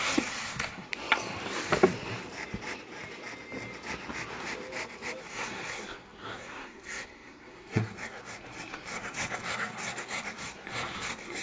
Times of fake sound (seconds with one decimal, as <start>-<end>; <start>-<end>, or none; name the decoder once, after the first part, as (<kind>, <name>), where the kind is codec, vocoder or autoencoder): 0.0-0.9 (codec, SNAC); 5.2-11.4